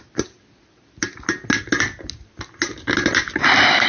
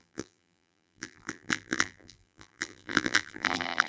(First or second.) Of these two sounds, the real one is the first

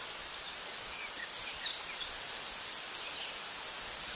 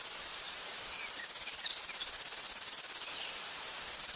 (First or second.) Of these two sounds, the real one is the first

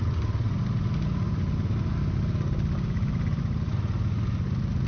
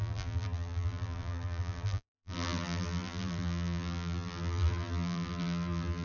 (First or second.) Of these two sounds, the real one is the first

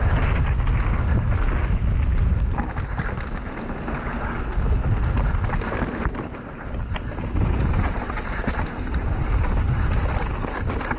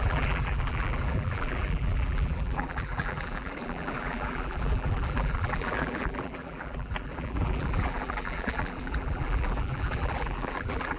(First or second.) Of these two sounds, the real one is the first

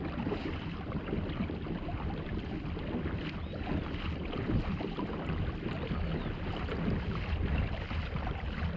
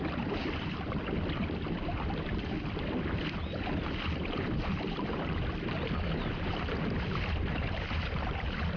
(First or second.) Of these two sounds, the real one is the first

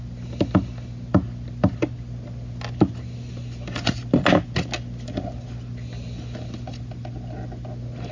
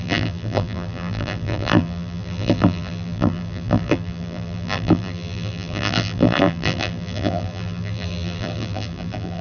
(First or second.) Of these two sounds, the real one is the first